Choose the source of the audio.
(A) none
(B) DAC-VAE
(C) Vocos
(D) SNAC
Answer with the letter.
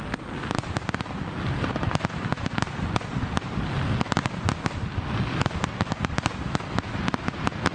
A